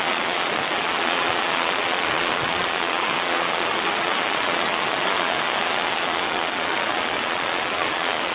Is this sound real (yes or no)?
no